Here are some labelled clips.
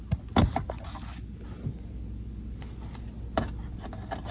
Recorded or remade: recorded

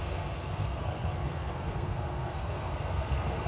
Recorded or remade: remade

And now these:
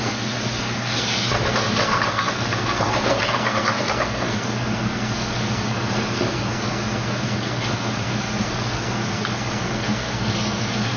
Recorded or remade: remade